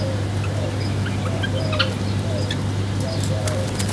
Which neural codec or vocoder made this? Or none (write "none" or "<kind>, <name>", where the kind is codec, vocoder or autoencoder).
none